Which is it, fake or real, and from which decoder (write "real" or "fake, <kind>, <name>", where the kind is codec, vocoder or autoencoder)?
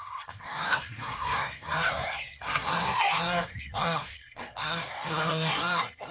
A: fake, codec, SNAC